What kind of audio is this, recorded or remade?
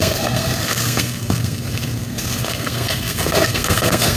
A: remade